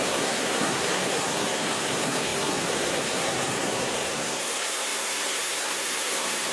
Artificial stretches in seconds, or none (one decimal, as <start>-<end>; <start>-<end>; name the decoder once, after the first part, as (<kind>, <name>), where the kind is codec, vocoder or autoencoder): 0.0-6.5 (codec, SNAC)